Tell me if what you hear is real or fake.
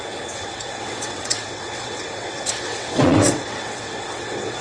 fake